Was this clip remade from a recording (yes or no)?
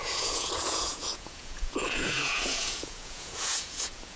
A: yes